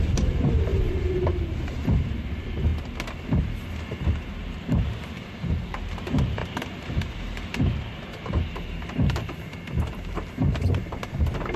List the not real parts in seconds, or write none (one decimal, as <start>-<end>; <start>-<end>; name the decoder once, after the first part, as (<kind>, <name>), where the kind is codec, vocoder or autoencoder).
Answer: 0.0-2.7 (vocoder, BigVGAN v2); 3.4-11.6